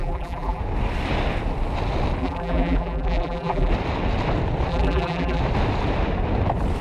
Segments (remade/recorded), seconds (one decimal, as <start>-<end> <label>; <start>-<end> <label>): 0.0-0.6 remade; 0.6-2.2 recorded; 2.2-3.7 remade; 3.7-4.7 recorded; 4.7-5.4 remade; 5.4-6.8 recorded